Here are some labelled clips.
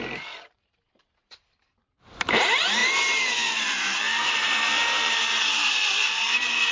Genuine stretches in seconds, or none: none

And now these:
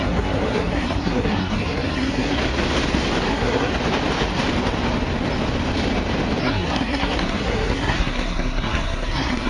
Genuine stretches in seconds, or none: 2.4-3.3; 3.7-6.4

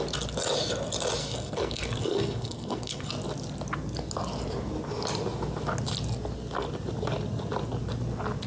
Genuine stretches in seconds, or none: 0.0-1.2; 3.1-8.5

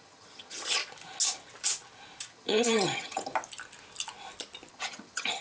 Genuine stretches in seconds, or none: 0.8-2.3; 3.3-4.7